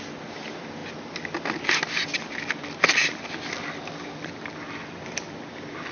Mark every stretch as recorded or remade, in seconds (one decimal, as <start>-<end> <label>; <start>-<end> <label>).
0.0-5.9 recorded